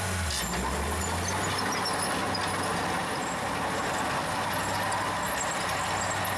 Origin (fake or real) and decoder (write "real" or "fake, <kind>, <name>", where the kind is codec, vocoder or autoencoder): real